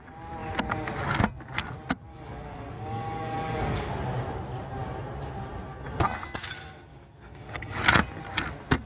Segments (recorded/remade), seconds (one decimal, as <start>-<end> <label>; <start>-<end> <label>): 0.0-2.1 recorded; 2.1-3.9 remade; 3.9-6.9 recorded; 6.9-7.8 remade; 7.8-8.9 recorded